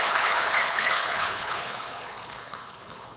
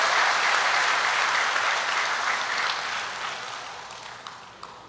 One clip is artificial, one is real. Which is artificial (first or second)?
first